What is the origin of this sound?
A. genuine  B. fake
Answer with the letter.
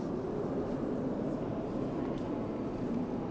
A